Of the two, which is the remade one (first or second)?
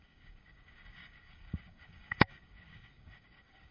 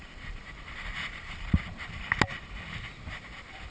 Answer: first